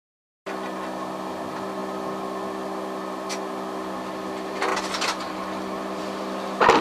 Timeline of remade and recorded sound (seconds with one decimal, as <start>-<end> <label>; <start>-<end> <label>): 0.0-6.8 recorded